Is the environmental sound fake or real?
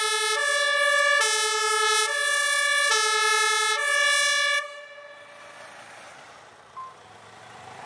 real